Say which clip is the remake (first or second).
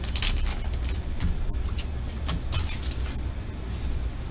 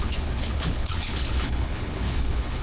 second